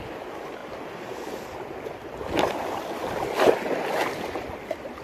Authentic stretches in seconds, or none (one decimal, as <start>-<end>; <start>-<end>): 0.0-5.0